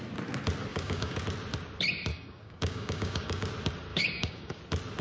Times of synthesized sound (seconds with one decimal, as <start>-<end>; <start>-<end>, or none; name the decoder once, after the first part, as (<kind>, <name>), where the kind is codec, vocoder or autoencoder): 0.7-1.2 (codec, DAC); 2.1-3.5; 3.9-4.6